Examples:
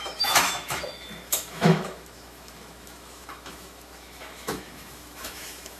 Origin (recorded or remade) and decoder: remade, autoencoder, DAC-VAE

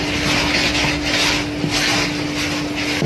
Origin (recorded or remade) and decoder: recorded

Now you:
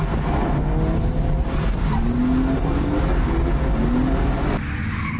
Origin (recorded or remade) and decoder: recorded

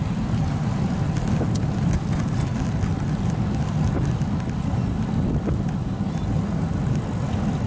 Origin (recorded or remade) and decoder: recorded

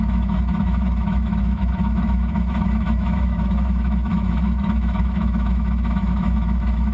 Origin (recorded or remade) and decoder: remade, autoencoder, DAC-VAE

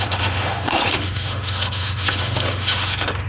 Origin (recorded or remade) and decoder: remade, autoencoder, DAC-VAE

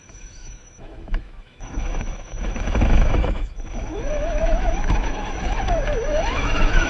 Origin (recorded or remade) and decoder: remade, autoencoder, DAC-VAE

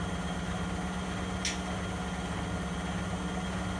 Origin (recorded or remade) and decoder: recorded